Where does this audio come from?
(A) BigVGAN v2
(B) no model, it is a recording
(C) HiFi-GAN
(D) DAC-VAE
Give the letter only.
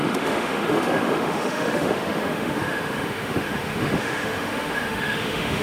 D